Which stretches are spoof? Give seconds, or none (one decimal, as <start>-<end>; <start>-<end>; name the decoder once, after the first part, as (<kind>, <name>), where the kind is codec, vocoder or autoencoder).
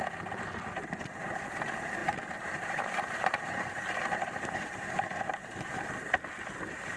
2.0-5.9 (vocoder, BigVGAN v2)